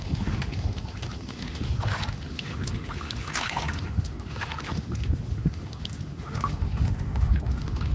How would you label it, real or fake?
fake